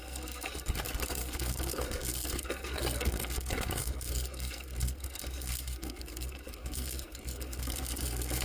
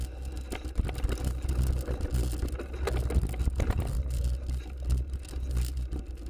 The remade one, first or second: first